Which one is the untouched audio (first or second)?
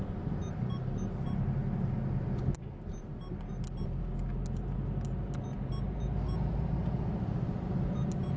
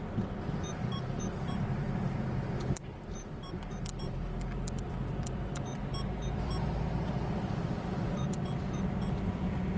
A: first